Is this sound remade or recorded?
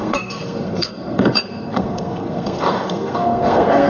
remade